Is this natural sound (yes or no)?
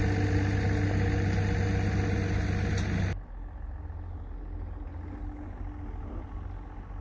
yes